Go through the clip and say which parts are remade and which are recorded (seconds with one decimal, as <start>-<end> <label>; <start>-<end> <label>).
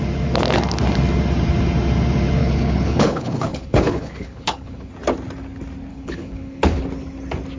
0.0-2.4 recorded; 2.4-4.9 remade; 4.9-5.9 recorded; 5.9-6.8 remade; 6.8-7.6 recorded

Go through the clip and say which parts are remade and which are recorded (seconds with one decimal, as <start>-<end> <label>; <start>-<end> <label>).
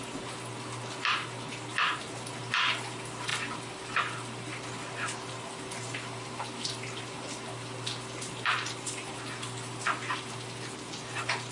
0.0-11.5 recorded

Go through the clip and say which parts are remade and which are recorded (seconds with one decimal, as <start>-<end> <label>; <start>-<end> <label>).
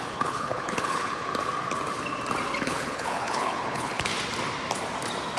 0.0-1.3 remade; 1.3-2.6 recorded; 2.6-4.1 remade; 4.1-5.4 recorded